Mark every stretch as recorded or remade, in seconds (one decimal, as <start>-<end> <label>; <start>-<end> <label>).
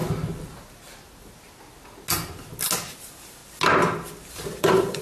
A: 0.0-3.0 recorded; 3.0-3.4 remade; 3.4-4.3 recorded; 4.3-5.0 remade